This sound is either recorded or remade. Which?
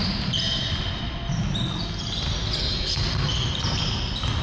recorded